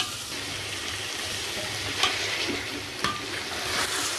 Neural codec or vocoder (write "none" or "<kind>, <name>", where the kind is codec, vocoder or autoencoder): none